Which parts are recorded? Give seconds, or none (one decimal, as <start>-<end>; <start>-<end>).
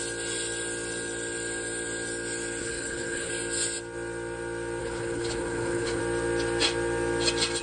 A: 0.0-2.6; 3.3-4.8; 6.0-7.6